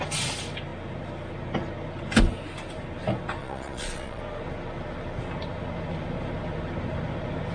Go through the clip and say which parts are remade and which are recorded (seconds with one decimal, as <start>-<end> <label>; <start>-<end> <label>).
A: 0.0-3.4 recorded; 3.4-4.2 remade; 4.2-7.5 recorded